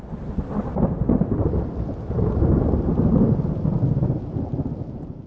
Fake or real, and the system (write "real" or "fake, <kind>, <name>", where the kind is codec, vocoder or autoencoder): fake, vocoder, BigVGAN v2